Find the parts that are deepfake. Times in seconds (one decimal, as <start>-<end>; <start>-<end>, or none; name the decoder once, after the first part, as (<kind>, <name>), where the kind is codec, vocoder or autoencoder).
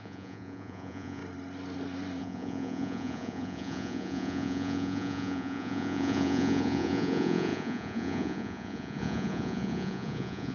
0.0-1.2 (vocoder, Vocos); 2.2-10.5